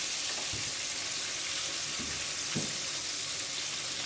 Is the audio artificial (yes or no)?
no